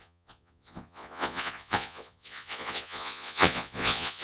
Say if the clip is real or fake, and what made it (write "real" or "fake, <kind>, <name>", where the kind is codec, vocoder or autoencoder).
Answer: fake, vocoder, Vocos